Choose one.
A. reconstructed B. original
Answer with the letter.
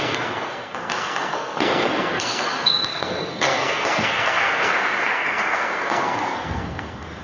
A